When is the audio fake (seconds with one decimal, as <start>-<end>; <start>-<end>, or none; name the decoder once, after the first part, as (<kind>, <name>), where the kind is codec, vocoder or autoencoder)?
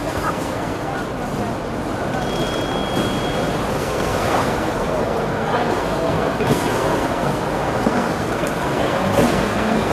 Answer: 0.0-0.9 (codec, SNAC); 3.7-9.9